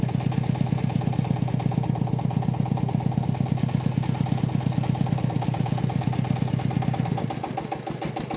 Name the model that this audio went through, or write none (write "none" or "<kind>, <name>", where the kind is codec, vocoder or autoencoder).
none